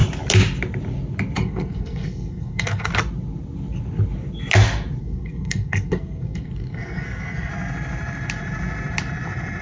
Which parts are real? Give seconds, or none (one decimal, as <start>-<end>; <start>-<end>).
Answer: 0.0-1.4; 2.9-5.0; 7.5-9.6